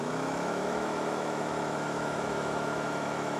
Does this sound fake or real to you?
fake